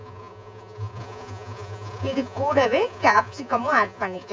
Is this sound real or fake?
fake